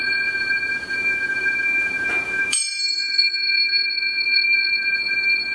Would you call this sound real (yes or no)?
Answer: no